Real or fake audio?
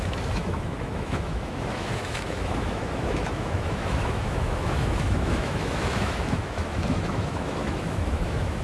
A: fake